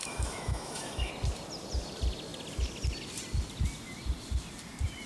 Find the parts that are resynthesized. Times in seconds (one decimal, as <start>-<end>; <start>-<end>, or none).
0.0-1.1